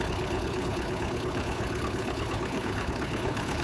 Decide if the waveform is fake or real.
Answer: fake